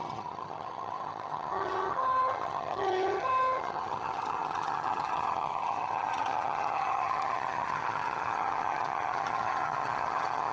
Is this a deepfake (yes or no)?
yes